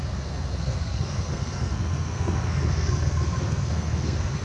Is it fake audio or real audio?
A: fake